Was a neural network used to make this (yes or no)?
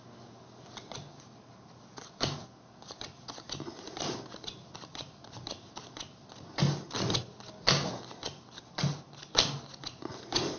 no